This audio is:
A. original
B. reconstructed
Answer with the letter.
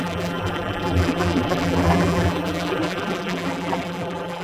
B